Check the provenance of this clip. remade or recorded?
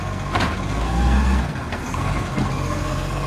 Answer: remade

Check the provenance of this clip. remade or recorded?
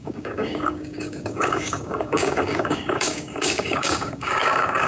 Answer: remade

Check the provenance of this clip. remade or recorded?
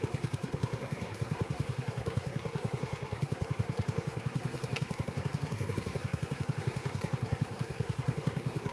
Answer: remade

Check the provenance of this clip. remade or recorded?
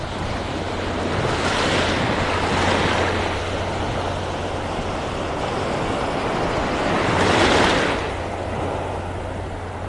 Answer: recorded